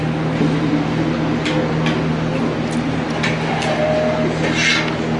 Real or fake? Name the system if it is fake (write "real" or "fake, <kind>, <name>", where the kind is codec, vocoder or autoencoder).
real